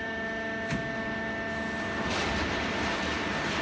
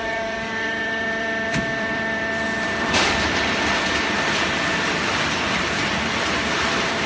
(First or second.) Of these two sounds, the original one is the first